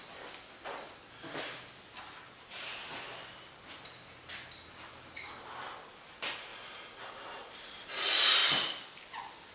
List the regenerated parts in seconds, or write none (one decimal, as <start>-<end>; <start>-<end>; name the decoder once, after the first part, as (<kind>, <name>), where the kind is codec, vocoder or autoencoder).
none